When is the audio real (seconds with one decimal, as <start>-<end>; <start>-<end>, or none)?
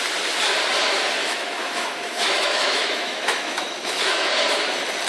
0.0-1.2; 4.3-5.1